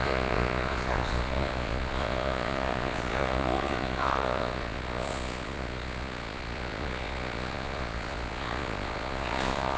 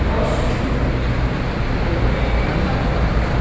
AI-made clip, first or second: first